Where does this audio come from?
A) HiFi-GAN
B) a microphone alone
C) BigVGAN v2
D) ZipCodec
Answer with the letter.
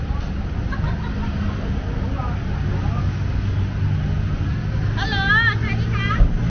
B